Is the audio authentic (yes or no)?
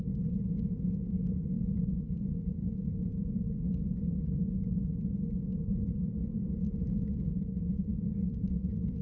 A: yes